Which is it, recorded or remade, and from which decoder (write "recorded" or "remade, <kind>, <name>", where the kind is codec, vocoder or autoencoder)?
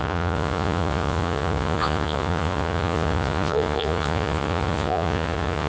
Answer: remade, vocoder, Vocos